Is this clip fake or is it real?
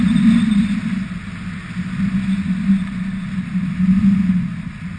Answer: real